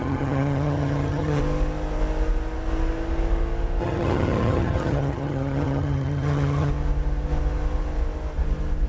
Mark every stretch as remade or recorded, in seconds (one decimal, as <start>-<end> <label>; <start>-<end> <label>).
0.0-1.4 remade; 1.4-3.8 recorded; 3.8-6.7 remade; 6.7-8.9 recorded